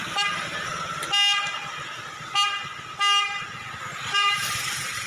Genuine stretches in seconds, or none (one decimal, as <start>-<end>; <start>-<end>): 0.7-3.8